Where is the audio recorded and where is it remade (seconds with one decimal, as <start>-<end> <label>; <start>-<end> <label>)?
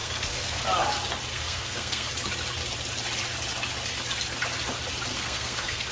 0.0-0.6 remade; 0.6-1.3 recorded; 1.3-2.1 remade; 2.1-5.1 recorded; 5.1-5.9 remade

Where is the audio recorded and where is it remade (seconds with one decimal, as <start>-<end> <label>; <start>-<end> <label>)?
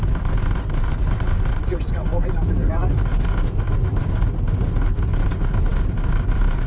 0.0-6.7 recorded